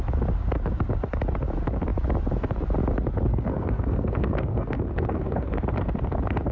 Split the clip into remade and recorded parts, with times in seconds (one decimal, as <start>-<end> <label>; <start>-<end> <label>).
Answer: 0.0-3.3 recorded; 3.3-5.6 remade; 5.6-6.5 recorded